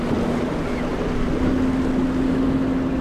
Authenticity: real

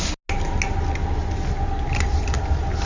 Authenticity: real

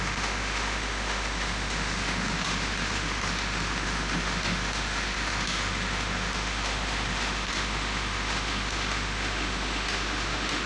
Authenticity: fake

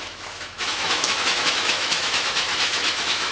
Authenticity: fake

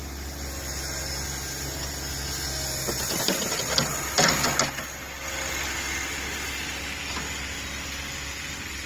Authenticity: real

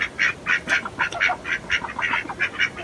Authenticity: real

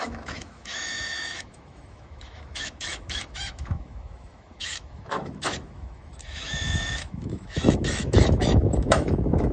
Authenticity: fake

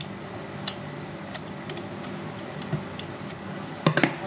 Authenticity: real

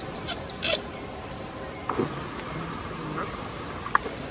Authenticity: real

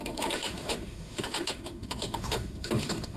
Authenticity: fake